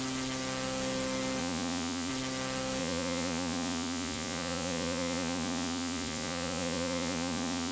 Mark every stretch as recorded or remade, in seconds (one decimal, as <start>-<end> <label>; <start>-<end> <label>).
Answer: 0.0-1.4 recorded; 1.4-2.1 remade; 2.1-2.8 recorded; 2.8-7.7 remade